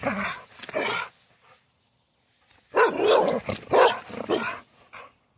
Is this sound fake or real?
real